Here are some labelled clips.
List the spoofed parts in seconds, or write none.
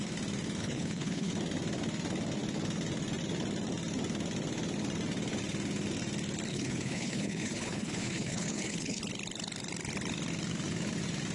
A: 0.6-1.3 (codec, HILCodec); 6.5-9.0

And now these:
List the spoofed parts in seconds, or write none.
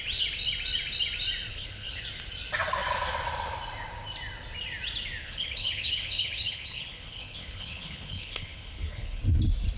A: 1.5-2.0 (codec, HILCodec); 5.2-9.2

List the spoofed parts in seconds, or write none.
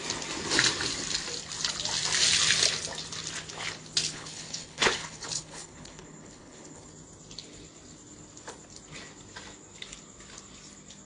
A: 4.1-6.9 (codec, HILCodec)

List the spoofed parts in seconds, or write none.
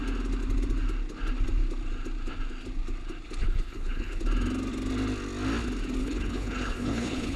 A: 3.4-4.2 (codec, HILCodec); 6.0-7.4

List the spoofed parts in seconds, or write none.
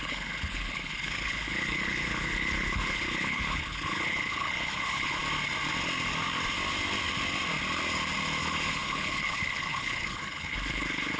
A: 0.0-5.2 (codec, HILCodec); 8.4-11.2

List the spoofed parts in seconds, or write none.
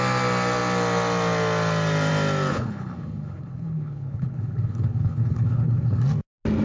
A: 2.5-6.0 (codec, HILCodec)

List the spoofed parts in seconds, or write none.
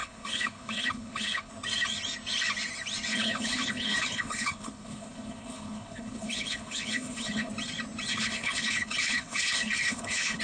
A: 0.0-1.5 (codec, HILCodec); 3.1-7.5; 8.1-10.4